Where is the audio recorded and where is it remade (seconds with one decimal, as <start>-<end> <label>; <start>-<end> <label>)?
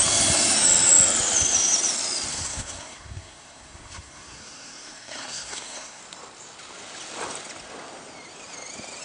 0.0-2.3 recorded; 2.3-6.0 remade; 6.0-9.0 recorded